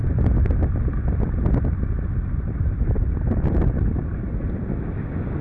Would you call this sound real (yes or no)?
yes